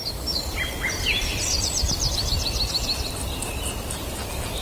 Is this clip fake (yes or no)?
no